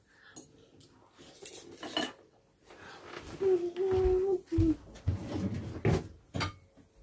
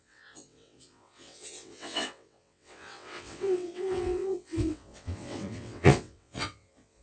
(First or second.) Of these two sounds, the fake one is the second